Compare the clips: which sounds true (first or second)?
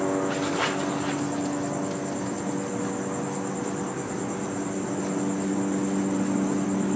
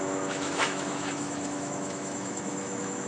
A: first